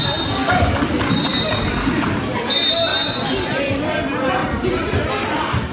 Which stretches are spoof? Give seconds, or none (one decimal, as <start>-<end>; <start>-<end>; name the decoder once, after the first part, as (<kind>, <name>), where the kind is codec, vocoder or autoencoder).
none